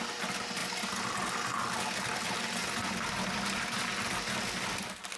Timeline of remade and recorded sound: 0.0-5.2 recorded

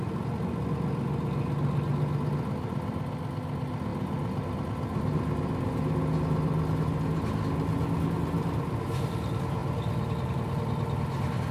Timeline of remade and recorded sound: 0.0-11.5 recorded